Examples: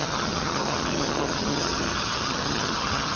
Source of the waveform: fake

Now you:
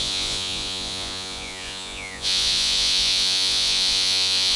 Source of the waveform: fake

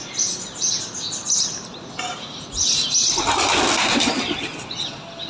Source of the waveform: real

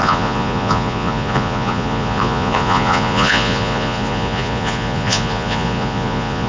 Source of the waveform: fake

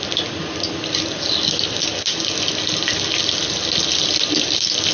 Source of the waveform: real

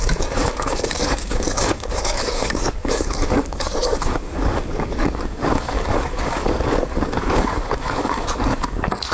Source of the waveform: fake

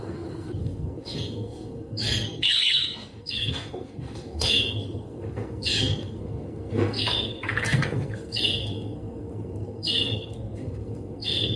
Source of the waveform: fake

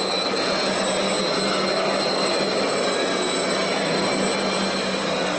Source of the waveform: real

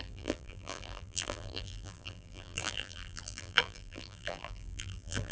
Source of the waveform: fake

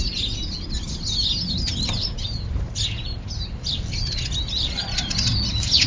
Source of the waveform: real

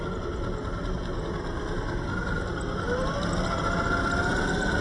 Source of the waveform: real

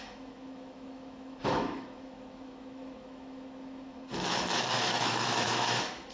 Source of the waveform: fake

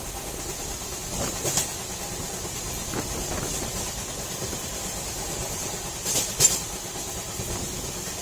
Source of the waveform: real